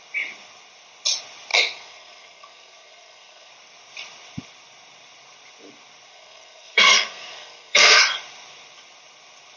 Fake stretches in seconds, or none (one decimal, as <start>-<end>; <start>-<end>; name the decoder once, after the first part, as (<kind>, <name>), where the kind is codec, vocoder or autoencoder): 1.5-3.5 (codec, SNAC); 6.1-8.0